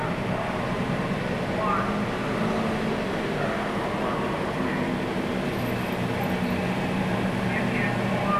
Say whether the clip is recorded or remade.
recorded